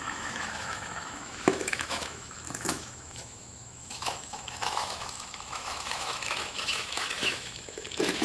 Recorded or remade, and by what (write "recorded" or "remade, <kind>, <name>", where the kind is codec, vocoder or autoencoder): remade, autoencoder, DAC-VAE